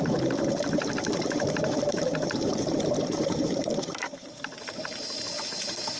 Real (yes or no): no